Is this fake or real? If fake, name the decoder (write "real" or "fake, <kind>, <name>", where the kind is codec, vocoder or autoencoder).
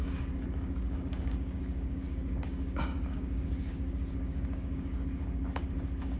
fake, codec, DAC